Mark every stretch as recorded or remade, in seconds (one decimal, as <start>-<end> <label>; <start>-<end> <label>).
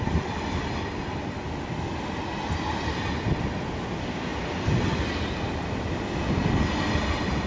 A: 0.0-7.5 recorded